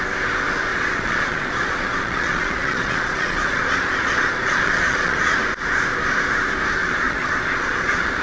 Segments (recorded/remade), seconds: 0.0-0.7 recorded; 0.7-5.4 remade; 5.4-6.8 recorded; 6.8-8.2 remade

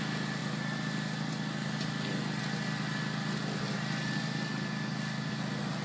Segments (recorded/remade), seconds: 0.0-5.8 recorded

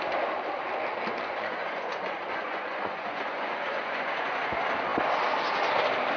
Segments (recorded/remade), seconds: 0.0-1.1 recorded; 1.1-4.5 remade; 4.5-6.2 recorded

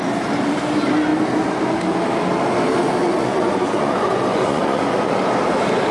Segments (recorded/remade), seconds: 0.0-3.0 recorded; 3.0-5.2 remade; 5.2-5.9 recorded

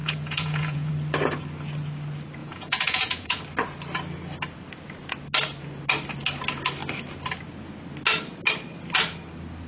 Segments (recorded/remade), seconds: 0.0-0.9 remade; 0.9-2.4 recorded; 2.4-3.4 remade; 3.4-9.7 recorded

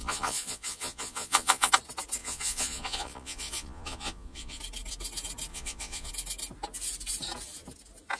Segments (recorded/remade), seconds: 0.0-1.7 remade; 1.7-2.2 recorded; 2.2-4.6 remade; 4.6-5.5 recorded; 5.5-6.1 remade; 6.1-8.2 recorded